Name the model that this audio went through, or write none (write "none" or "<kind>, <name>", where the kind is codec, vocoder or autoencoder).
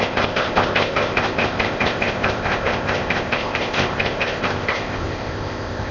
codec, ZipCodec